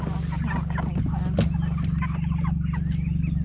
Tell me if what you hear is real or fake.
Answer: real